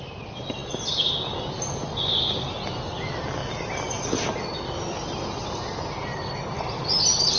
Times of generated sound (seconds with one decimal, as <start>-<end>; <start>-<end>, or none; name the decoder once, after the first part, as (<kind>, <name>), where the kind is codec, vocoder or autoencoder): none